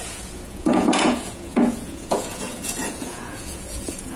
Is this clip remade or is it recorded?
remade